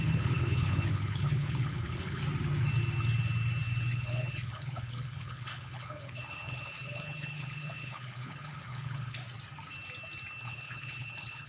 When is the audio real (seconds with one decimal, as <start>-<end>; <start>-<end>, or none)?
2.2-3.9; 9.2-10.4